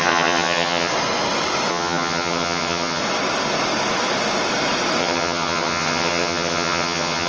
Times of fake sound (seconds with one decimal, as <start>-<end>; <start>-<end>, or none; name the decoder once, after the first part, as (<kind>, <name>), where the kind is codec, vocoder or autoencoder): 0.0-0.9 (vocoder, HiFi-GAN); 1.7-3.0; 5.0-7.3